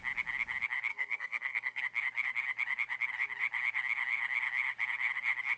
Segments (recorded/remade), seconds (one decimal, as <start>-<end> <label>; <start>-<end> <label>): 0.0-0.9 recorded; 0.9-1.8 remade; 1.8-5.6 recorded